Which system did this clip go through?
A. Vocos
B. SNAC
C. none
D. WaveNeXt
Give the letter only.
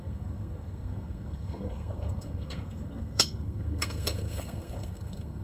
B